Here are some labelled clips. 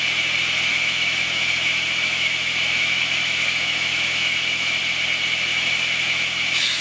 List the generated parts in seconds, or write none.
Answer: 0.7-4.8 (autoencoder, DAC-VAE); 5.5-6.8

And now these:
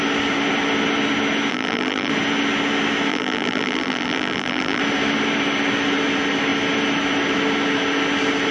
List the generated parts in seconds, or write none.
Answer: 1.5-2.1 (vocoder, BigVGAN v2); 3.1-4.8

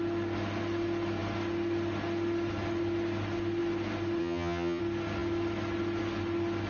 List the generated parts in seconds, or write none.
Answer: 4.2-4.8 (vocoder, HiFi-GAN)